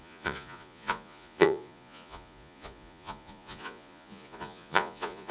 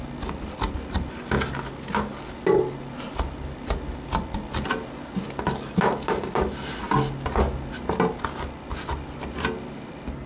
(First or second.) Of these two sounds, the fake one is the first